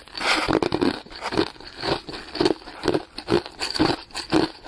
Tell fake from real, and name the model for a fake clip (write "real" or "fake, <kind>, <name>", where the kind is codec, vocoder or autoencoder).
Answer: real